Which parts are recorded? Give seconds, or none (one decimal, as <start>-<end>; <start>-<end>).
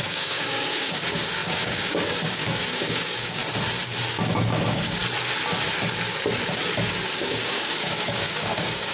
3.4-4.1; 5.0-7.2